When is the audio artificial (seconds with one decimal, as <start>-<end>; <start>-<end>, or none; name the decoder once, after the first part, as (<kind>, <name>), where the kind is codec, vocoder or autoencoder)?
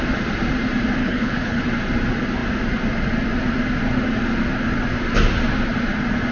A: 1.0-1.6 (codec, HILCodec)